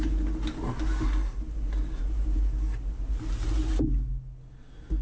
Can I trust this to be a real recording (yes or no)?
yes